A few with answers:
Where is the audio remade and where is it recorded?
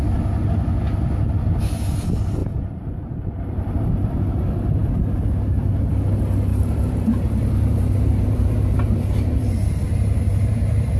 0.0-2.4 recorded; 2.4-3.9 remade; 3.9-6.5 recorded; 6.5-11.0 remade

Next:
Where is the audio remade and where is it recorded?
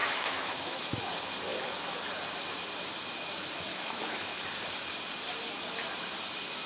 0.0-1.0 remade; 1.0-3.7 recorded; 3.7-4.4 remade; 4.4-6.7 recorded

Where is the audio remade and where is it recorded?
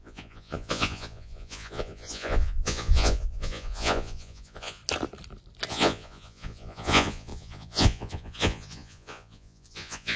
0.0-4.8 remade; 4.8-5.7 recorded; 5.7-10.2 remade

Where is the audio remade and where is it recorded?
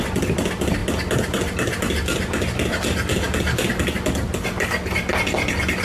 0.0-5.8 recorded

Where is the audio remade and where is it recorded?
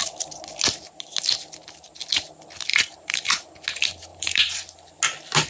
0.0-2.7 recorded; 2.7-3.5 remade; 3.5-4.1 recorded; 4.1-5.0 remade; 5.0-5.5 recorded